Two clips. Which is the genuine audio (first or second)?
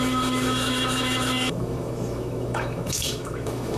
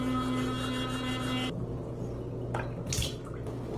second